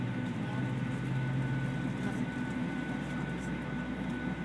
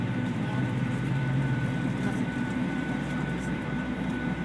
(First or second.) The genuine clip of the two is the first